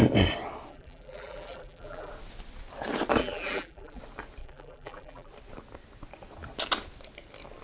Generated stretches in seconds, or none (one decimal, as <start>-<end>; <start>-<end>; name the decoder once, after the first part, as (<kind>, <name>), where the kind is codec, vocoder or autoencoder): 0.7-2.1 (vocoder, BigVGAN v2); 3.2-4.0; 4.4-5.3